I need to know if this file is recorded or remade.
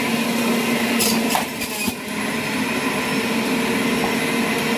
recorded